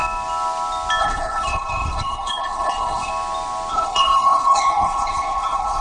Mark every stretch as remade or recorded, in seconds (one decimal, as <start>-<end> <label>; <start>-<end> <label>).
0.0-1.0 recorded; 1.0-3.1 remade; 3.1-3.7 recorded; 3.7-5.8 remade